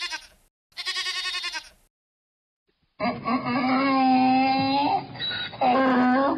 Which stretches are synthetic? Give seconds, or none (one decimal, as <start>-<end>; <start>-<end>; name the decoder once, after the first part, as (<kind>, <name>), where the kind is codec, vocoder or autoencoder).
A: none